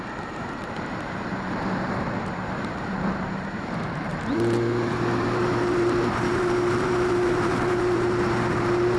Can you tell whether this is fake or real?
fake